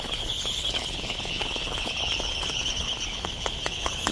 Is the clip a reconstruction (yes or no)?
yes